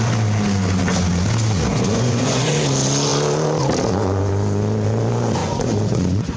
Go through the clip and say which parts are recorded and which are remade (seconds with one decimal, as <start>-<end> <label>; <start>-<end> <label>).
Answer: 0.0-1.7 recorded; 1.7-2.5 remade; 2.5-5.4 recorded; 5.4-6.4 remade